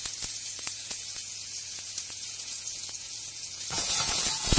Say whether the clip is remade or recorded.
remade